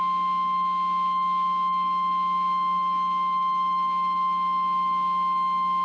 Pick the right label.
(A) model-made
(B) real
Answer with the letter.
A